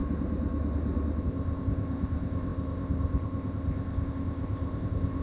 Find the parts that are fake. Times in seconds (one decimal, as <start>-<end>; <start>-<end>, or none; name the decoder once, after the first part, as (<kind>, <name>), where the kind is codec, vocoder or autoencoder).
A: 1.2-5.2 (codec, ZipCodec)